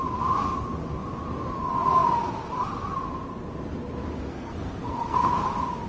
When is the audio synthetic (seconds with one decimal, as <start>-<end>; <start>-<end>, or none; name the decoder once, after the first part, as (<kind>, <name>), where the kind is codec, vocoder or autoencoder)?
4.3-5.3 (codec, SNAC)